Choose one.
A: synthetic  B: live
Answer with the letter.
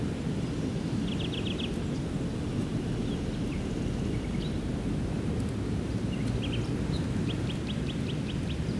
B